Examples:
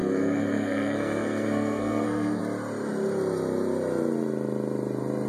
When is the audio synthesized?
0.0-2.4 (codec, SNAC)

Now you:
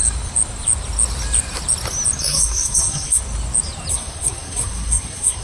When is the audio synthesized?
2.2-3.2 (codec, SNAC); 3.9-5.4